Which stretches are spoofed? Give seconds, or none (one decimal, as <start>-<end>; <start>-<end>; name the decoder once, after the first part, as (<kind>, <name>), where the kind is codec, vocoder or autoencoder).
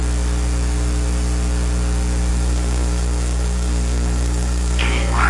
2.3-5.3 (codec, SNAC)